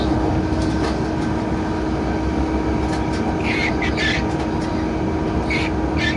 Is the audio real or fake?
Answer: real